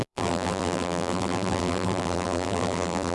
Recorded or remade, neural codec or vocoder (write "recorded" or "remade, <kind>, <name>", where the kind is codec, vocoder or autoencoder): remade, vocoder, BigVGAN v2